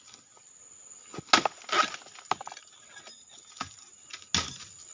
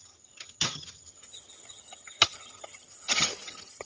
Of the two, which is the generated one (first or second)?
second